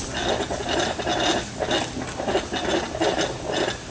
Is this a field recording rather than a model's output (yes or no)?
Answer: yes